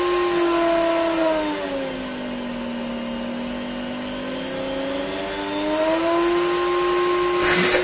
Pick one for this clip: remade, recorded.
recorded